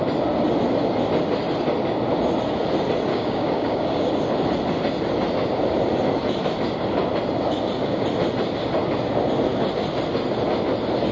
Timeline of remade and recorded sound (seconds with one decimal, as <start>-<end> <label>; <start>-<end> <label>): 0.0-3.1 recorded; 3.1-4.1 remade; 4.1-11.1 recorded